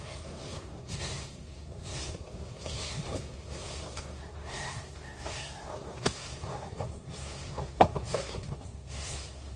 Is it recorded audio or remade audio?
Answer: remade